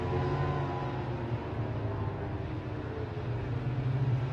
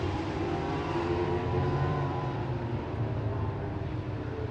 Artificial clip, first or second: second